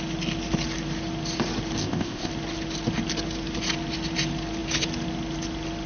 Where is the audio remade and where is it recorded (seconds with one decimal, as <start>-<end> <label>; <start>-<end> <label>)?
0.0-1.8 recorded; 1.8-2.3 remade; 2.3-5.9 recorded

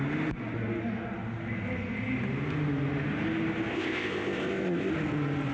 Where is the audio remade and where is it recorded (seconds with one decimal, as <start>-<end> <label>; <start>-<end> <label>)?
0.0-3.7 recorded; 3.7-4.9 remade; 4.9-5.5 recorded